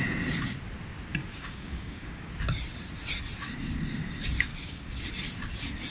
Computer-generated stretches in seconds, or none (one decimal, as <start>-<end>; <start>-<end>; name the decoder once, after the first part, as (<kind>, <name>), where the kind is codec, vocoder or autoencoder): 1.2-2.3 (codec, DAC); 4.5-5.0